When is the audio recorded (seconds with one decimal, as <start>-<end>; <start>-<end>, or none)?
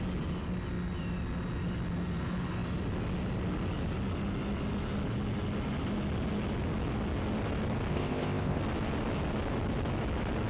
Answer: 0.0-7.9; 8.6-10.5